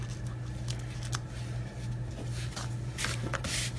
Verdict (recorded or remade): recorded